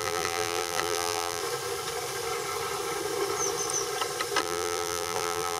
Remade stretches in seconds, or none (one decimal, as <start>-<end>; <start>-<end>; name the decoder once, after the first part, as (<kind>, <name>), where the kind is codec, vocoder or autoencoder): 0.0-1.4 (vocoder, BigVGAN v2); 4.4-5.6

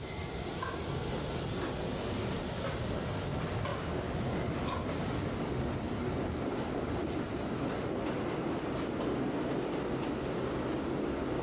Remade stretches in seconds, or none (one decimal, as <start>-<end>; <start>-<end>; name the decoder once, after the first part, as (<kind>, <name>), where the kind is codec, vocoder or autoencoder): none

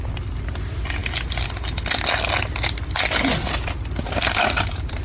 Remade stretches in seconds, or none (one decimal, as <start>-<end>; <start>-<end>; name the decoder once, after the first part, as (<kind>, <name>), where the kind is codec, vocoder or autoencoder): 0.0-1.0 (vocoder, BigVGAN v2); 4.0-5.0

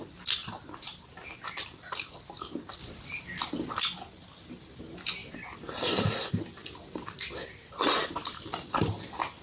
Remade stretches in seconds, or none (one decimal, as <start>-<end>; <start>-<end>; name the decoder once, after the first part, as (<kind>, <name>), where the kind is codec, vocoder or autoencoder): 0.4-2.1 (vocoder, BigVGAN v2); 2.8-3.8; 5.2-6.1; 6.6-9.0

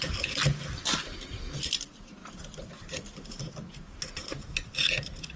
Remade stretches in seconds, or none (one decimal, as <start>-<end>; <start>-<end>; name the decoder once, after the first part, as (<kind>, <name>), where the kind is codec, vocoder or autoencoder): none

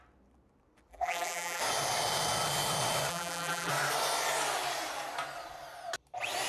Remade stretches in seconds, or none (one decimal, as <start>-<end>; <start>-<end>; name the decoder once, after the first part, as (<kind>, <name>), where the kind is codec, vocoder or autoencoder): 0.9-1.6 (vocoder, BigVGAN v2); 3.1-3.7

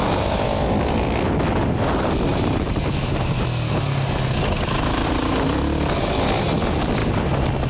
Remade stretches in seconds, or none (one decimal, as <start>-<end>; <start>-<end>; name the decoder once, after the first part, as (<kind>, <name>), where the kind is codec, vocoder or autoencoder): 2.3-3.4 (vocoder, BigVGAN v2)

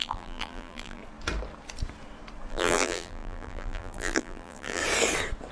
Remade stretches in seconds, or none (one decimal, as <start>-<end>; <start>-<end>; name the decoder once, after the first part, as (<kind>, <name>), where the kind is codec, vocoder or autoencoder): 0.0-1.0 (vocoder, BigVGAN v2); 2.5-4.8